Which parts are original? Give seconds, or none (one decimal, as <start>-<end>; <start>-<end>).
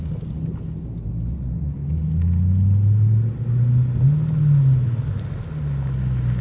0.0-6.4